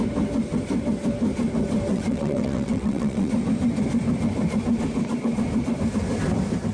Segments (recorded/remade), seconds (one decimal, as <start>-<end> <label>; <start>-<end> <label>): 0.0-1.9 recorded; 1.9-3.3 remade; 3.3-6.7 recorded